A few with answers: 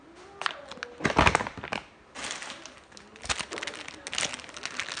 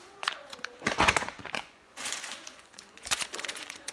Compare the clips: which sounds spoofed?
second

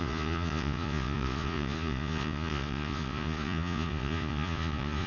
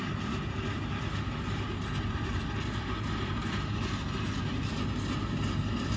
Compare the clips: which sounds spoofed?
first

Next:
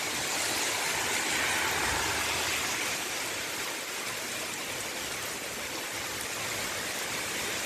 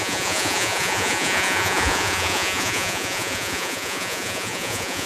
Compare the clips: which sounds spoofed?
second